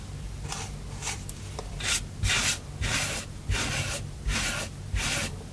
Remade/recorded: recorded